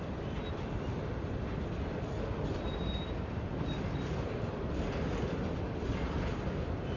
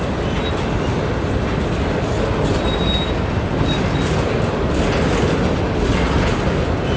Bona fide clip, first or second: second